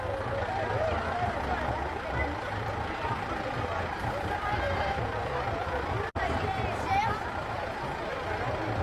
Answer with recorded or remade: recorded